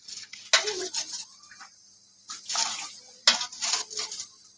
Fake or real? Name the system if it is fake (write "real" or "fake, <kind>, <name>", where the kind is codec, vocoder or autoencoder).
real